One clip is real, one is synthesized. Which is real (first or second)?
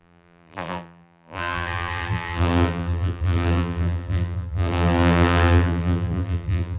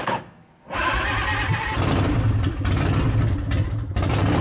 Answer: second